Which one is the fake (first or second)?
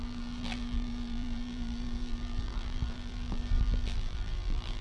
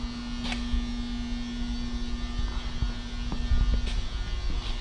first